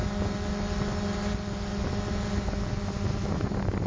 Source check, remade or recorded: recorded